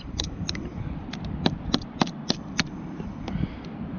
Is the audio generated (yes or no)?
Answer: yes